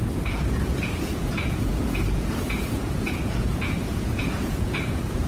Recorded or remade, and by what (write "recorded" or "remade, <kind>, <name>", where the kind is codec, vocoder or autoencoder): remade, vocoder, Vocos